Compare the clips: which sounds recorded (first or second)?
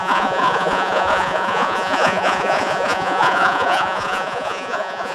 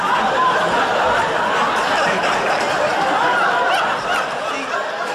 second